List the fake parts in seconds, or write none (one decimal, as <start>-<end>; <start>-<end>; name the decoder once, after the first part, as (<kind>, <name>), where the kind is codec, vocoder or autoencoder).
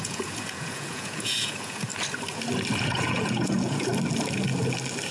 0.0-1.9 (vocoder, Vocos); 2.8-3.9